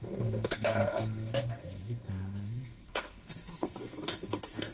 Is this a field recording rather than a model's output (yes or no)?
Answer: no